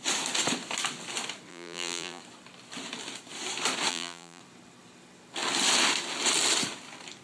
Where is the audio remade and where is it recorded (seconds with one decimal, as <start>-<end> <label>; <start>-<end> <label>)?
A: 0.0-1.5 recorded; 1.5-2.2 remade; 2.2-3.9 recorded; 3.9-4.4 remade; 4.4-7.2 recorded